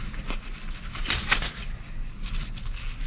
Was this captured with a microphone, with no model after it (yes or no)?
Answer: yes